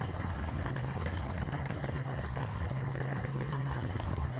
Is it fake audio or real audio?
fake